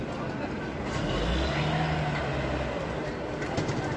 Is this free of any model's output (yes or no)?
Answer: yes